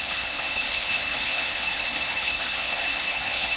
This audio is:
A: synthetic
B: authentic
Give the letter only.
A